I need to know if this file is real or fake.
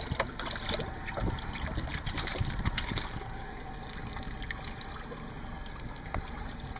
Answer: real